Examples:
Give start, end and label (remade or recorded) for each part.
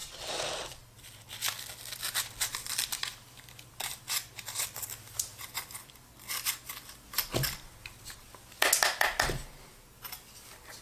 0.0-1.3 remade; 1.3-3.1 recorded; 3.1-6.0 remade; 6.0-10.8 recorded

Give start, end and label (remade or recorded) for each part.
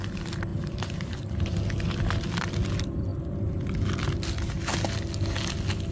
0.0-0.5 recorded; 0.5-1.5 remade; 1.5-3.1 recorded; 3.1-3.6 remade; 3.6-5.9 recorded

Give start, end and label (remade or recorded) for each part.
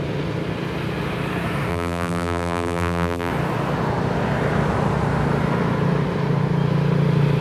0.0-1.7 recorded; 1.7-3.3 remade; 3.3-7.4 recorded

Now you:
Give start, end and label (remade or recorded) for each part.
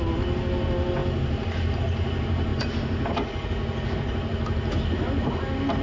0.0-5.8 recorded